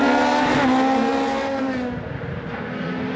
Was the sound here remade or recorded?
recorded